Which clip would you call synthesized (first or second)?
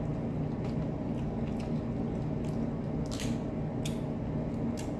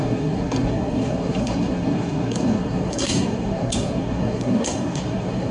second